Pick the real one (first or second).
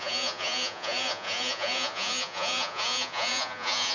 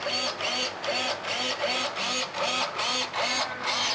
second